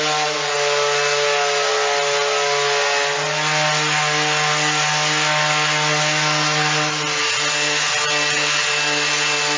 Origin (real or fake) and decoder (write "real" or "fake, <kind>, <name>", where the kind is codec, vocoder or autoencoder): real